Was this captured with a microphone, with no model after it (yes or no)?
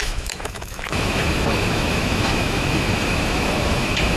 no